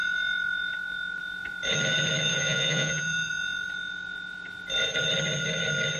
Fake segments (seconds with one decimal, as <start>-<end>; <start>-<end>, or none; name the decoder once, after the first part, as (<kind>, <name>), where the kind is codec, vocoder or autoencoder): 2.3-3.3 (vocoder, Vocos)